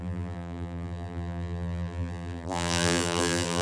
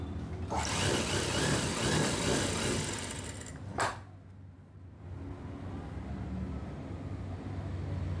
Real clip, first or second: second